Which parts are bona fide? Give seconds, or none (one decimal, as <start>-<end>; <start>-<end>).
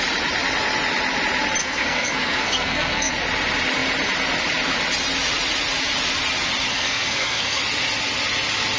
0.0-1.6; 3.1-6.7; 7.6-8.8